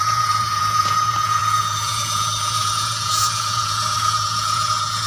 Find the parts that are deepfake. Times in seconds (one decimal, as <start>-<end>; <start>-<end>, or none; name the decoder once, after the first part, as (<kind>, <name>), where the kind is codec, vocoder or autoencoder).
0.0-5.1 (vocoder, Vocos)